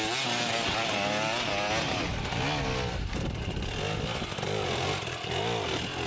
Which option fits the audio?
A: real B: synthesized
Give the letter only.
A